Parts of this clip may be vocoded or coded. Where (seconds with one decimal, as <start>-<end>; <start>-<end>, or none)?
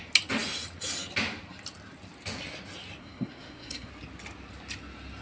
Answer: 3.0-3.9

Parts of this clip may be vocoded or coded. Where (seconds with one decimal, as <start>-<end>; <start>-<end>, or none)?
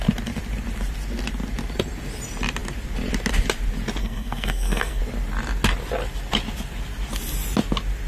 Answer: 4.0-5.0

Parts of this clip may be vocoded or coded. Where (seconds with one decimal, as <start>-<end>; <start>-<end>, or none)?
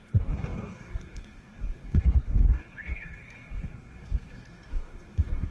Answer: 0.0-5.5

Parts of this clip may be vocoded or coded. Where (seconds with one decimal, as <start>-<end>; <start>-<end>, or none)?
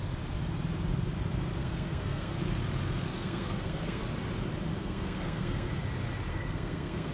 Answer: 1.6-2.4; 3.1-4.0; 4.8-5.7; 6.3-7.1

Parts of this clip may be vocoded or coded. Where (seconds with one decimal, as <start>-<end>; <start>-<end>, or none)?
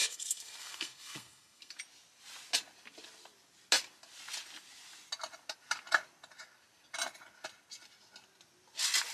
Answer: 0.0-1.7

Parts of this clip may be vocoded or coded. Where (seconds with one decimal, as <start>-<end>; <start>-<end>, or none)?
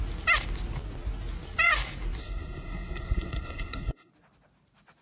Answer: 2.2-4.1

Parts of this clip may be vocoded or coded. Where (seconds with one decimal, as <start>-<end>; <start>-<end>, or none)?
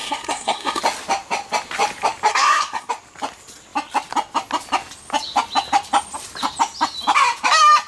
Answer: 0.0-0.8; 2.3-2.9